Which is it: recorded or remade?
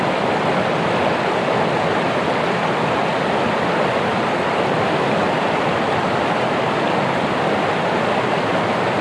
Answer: recorded